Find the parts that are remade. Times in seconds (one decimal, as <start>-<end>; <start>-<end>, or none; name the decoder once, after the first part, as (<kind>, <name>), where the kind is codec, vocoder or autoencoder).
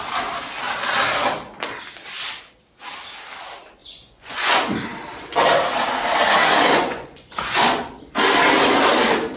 3.8-4.5 (vocoder, Vocos); 6.6-7.9